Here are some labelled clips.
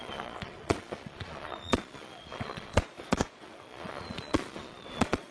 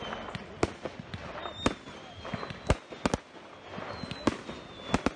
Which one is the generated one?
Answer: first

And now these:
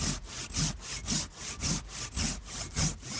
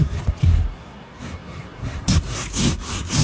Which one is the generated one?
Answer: second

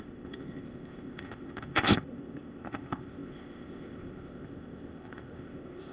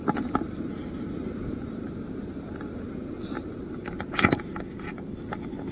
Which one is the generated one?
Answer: first